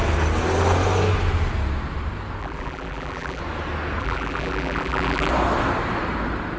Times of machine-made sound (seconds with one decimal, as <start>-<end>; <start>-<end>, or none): 2.4-3.4; 4.0-5.3